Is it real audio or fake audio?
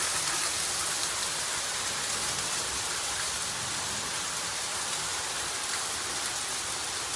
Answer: real